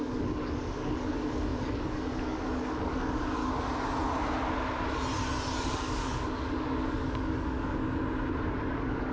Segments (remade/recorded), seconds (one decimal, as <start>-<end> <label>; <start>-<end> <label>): 0.0-3.4 remade; 3.4-5.6 recorded; 5.6-7.8 remade; 7.8-8.5 recorded; 8.5-9.1 remade